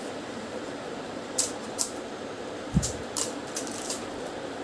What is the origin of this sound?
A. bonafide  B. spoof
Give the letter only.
B